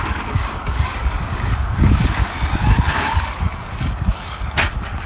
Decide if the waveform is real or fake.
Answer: fake